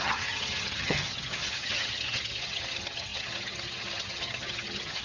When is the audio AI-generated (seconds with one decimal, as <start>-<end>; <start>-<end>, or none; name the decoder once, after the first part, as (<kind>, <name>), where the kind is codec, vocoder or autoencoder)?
0.0-5.0 (vocoder, HiFi-GAN)